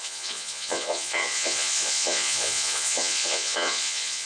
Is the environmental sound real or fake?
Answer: fake